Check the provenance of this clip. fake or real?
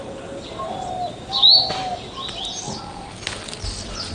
real